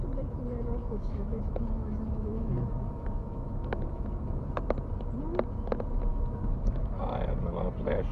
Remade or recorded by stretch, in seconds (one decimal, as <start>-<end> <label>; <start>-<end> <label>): 0.0-0.8 recorded; 0.8-4.4 remade; 4.4-6.1 recorded; 6.1-6.9 remade; 6.9-8.1 recorded